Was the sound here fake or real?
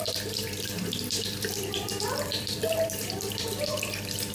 fake